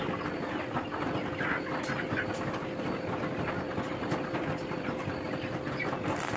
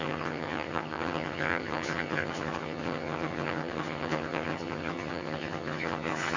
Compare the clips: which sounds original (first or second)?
first